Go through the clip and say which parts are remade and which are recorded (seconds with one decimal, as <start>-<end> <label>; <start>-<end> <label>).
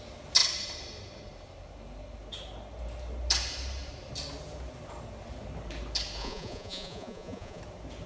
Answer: 0.0-6.2 recorded; 6.2-7.6 remade; 7.6-8.1 recorded